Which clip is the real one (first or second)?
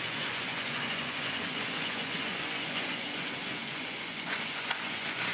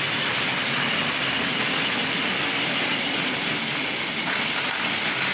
second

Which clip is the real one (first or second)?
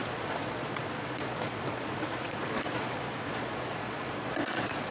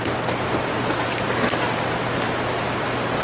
second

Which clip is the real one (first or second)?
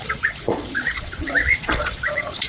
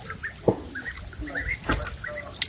second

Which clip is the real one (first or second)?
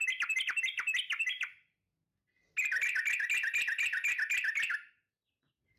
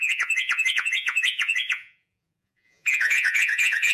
first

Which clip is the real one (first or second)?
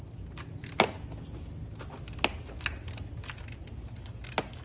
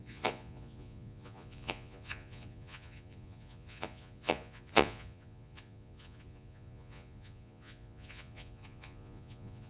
first